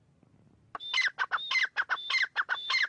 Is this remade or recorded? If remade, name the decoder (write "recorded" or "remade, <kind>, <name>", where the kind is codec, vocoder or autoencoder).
recorded